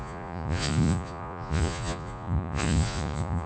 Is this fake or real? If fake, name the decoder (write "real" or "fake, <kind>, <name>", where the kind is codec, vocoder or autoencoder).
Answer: fake, vocoder, Vocos